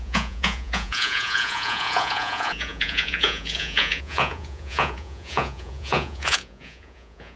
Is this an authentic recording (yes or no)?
no